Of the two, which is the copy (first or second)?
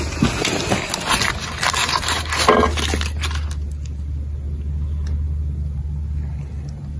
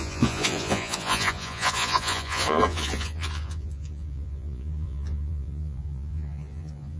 second